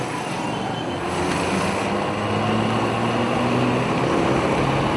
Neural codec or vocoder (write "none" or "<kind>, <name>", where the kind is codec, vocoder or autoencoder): none